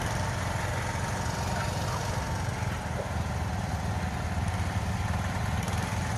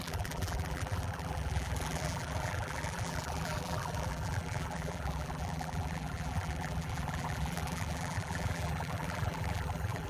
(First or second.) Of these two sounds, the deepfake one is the second